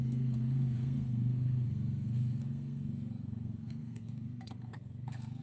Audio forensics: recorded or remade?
remade